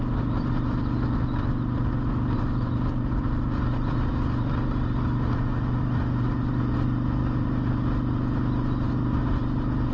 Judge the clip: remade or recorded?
recorded